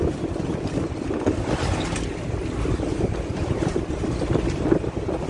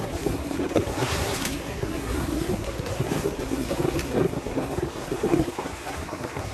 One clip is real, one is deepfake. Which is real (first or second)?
first